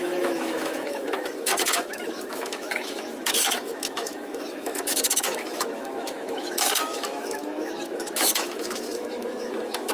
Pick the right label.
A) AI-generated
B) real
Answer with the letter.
A